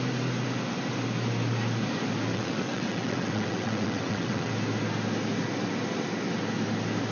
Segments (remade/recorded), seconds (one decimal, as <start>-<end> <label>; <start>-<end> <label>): 0.0-2.3 recorded; 2.3-4.5 remade; 4.5-7.1 recorded